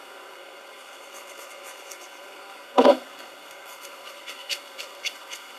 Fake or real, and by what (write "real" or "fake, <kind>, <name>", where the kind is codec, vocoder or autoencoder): fake, codec, SNAC